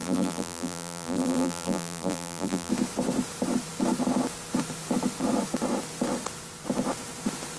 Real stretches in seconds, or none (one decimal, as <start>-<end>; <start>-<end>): 2.7-7.6